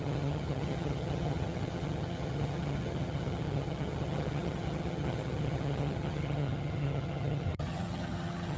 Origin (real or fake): fake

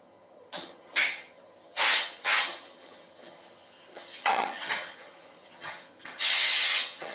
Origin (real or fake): fake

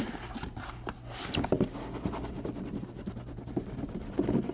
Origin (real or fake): real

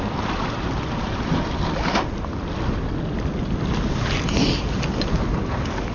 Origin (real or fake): real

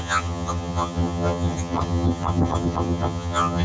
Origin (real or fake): fake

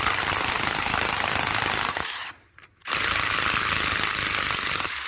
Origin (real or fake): real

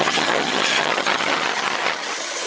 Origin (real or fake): fake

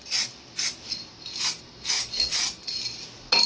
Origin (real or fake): real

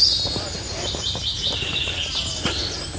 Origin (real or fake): real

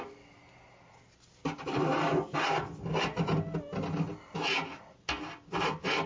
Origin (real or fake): real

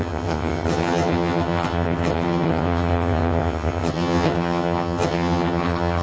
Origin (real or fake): fake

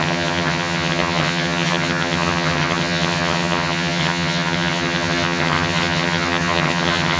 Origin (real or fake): fake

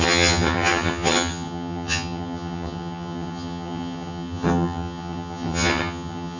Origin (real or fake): fake